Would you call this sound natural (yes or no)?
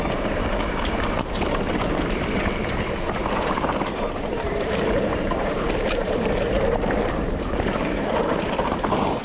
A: no